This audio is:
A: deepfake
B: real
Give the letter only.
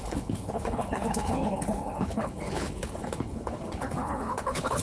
A